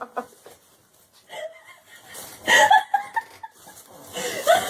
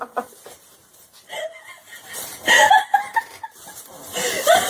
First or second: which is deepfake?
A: second